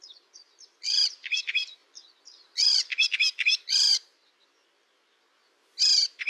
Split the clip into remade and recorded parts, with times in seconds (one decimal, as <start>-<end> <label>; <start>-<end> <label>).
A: 0.0-3.9 remade; 3.9-6.3 recorded